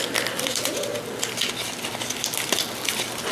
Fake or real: real